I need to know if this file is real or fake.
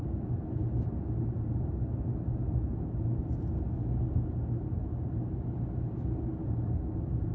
real